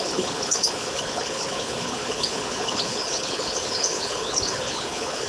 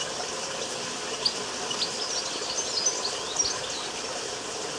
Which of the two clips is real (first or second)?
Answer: second